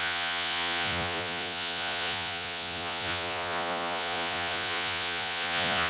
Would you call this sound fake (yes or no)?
yes